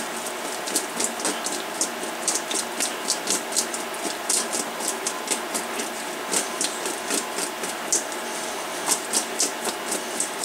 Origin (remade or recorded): recorded